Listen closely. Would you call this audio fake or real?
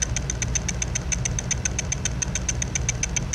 real